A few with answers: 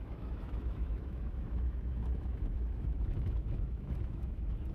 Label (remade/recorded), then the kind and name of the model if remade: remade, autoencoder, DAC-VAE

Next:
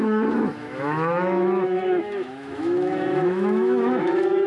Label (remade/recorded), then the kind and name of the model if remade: remade, autoencoder, DAC-VAE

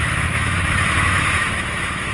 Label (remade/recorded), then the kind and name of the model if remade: remade, autoencoder, DAC-VAE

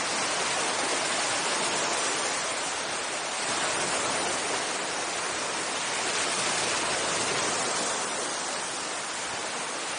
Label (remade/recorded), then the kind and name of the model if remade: recorded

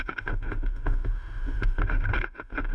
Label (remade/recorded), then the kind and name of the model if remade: remade, autoencoder, DAC-VAE